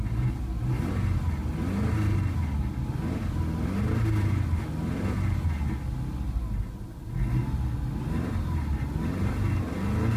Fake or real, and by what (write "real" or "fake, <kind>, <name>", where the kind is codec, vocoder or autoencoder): real